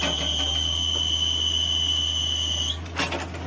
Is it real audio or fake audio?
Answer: real